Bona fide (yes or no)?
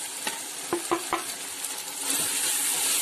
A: no